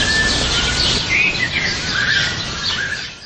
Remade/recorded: recorded